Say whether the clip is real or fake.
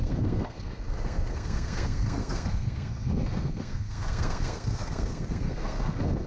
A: fake